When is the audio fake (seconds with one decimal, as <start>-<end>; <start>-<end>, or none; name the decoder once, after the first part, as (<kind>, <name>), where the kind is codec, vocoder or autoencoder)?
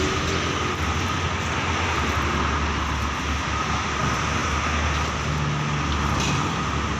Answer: none